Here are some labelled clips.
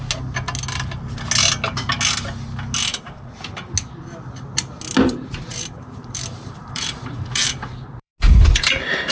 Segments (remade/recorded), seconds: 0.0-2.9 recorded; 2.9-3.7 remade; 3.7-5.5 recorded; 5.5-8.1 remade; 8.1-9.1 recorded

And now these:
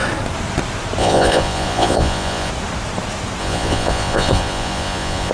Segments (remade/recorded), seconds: 0.0-1.0 recorded; 1.0-2.5 remade; 2.5-3.4 recorded; 3.4-5.3 remade

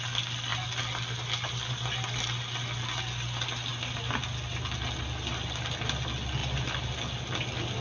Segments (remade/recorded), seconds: 0.0-7.8 recorded

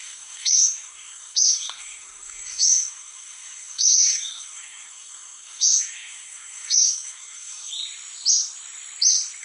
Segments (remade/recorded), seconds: 0.0-7.7 remade; 7.7-9.4 recorded